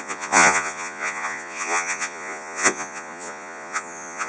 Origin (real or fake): fake